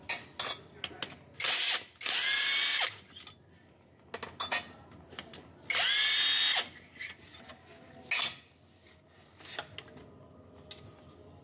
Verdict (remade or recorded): recorded